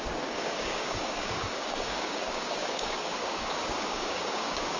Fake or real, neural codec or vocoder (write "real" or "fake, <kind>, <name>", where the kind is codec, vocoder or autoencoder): fake, codec, DAC